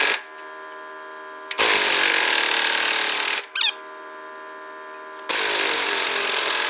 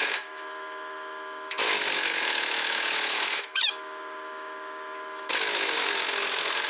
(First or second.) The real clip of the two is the first